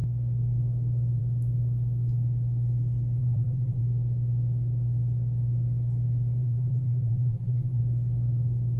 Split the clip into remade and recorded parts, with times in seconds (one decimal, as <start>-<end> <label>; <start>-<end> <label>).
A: 0.0-3.2 recorded; 3.2-3.8 remade; 3.8-6.4 recorded; 6.4-7.8 remade; 7.8-8.8 recorded